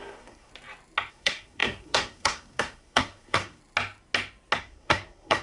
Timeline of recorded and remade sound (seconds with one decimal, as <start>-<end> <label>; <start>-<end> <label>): 0.0-0.5 remade; 0.5-1.1 recorded; 1.1-3.6 remade; 3.6-4.6 recorded; 4.6-5.4 remade

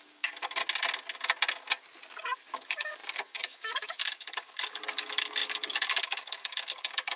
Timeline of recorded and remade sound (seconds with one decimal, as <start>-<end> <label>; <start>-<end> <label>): 0.0-0.6 remade; 0.6-2.2 recorded; 2.2-7.2 remade

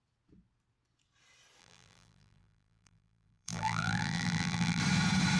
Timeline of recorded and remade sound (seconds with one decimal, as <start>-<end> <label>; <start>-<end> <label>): 0.0-1.6 recorded; 1.6-4.8 remade; 4.8-5.4 recorded

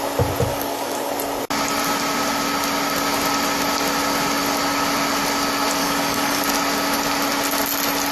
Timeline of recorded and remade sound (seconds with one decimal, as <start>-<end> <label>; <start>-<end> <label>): 0.0-0.5 recorded; 0.5-1.1 remade; 1.1-5.8 recorded; 5.8-6.4 remade; 6.4-8.1 recorded

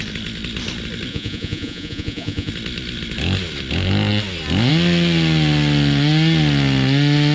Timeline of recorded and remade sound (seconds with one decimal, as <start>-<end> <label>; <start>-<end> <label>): 0.0-1.1 recorded; 1.1-2.5 remade; 2.5-7.3 recorded

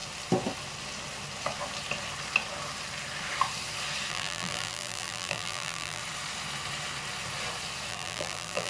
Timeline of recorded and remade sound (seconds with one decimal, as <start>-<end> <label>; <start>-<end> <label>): 0.0-4.1 recorded; 4.1-6.0 remade; 6.0-7.9 recorded; 7.9-8.7 remade